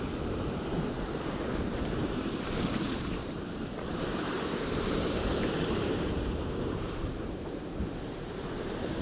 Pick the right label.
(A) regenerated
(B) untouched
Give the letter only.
A